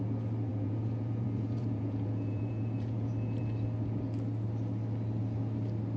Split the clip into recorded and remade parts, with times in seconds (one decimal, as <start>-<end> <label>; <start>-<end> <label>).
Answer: 0.0-0.5 recorded; 0.5-3.4 remade; 3.4-6.0 recorded